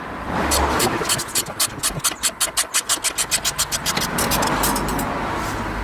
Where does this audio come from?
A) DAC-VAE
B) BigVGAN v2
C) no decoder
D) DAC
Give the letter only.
C